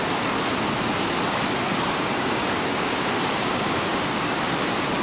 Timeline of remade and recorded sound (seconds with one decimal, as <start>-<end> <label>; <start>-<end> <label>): 0.0-1.7 recorded; 1.7-4.5 remade; 4.5-5.0 recorded